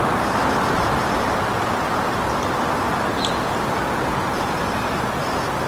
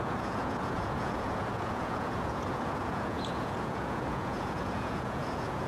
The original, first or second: first